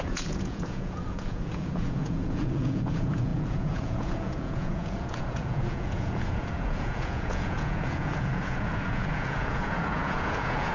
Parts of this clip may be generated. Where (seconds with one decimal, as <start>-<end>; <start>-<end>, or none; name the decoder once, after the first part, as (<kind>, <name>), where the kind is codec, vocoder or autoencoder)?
0.0-10.7 (vocoder, Vocos)